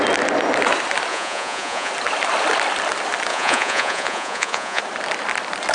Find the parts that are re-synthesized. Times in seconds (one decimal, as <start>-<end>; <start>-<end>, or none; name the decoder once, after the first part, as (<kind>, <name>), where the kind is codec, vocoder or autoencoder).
1.1-1.9 (vocoder, Vocos); 3.3-4.8